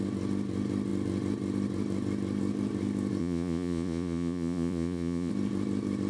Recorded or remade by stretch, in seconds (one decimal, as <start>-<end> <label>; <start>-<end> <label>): 0.0-3.2 recorded; 3.2-5.3 remade; 5.3-6.1 recorded